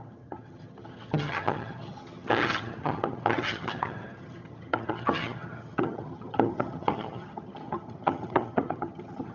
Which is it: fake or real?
fake